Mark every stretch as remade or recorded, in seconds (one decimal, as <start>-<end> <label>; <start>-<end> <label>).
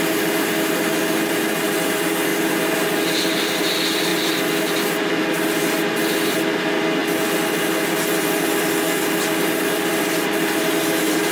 0.0-11.3 recorded